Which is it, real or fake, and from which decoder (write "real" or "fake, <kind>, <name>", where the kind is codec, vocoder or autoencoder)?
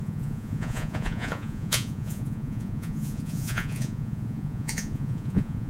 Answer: fake, vocoder, Vocos